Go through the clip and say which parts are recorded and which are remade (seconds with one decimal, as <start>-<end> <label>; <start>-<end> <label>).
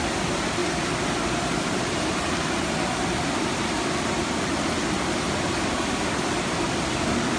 0.0-7.4 recorded